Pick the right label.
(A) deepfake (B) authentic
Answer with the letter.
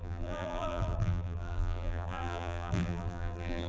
A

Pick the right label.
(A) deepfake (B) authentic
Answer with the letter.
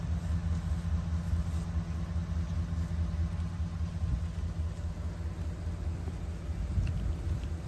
B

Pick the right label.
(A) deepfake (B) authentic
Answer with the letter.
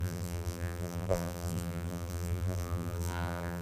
A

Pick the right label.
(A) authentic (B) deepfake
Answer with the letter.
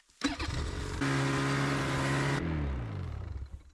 A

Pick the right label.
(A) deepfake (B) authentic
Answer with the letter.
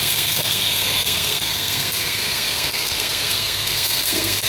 A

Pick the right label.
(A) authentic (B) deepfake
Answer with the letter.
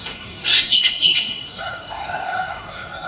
B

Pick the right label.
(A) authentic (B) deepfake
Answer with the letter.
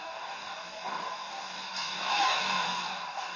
B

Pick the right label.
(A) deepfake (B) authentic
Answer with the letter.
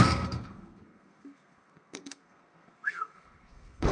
A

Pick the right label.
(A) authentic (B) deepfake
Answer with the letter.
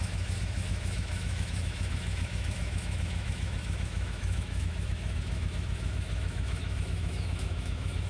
B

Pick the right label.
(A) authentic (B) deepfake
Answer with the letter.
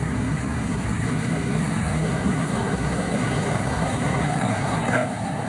B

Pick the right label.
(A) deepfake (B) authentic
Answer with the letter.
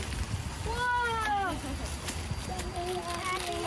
B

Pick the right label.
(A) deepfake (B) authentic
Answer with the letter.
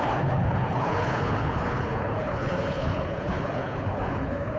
A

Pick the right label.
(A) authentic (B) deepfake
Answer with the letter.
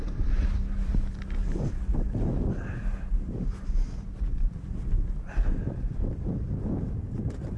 A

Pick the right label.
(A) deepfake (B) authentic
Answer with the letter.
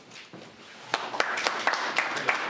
B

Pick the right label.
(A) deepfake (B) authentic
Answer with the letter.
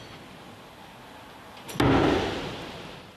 B